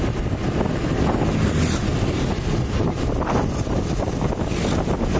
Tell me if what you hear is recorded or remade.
recorded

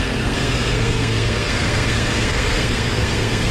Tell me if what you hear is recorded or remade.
remade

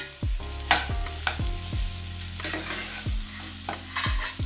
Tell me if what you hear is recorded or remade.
recorded